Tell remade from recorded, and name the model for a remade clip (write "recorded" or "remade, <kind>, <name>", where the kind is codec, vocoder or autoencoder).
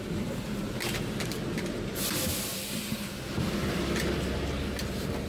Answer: recorded